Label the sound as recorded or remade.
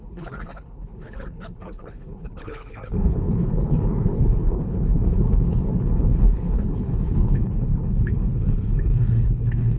remade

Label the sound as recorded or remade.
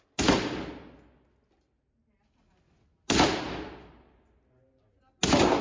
recorded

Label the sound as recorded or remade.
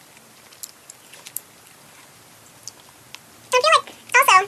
recorded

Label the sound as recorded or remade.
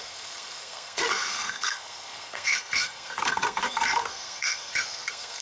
remade